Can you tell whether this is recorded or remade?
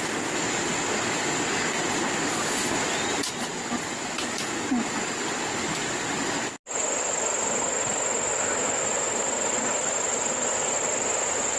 recorded